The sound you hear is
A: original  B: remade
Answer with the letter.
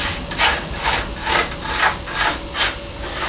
A